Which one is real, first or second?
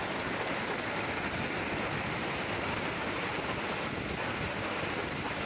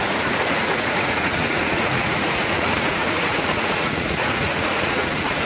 first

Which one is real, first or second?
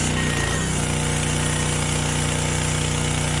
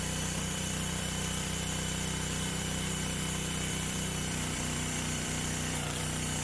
first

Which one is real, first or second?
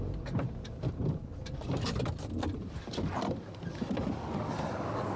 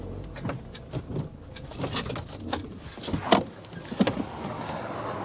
second